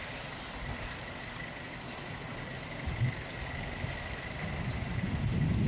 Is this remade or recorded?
recorded